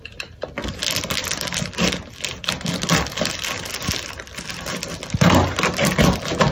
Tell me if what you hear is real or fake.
real